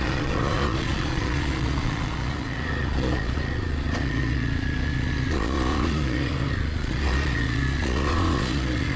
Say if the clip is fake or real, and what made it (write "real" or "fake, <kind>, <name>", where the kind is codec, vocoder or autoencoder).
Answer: fake, vocoder, Vocos